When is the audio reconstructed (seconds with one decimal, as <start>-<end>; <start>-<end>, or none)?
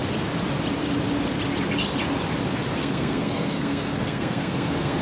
2.8-5.0